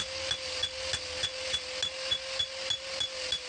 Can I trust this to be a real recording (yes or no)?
yes